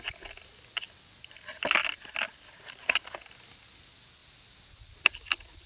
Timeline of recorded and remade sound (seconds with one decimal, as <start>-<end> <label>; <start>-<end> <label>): 0.0-5.7 recorded